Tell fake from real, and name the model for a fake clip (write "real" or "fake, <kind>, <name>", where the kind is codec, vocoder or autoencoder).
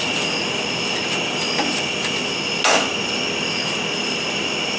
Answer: real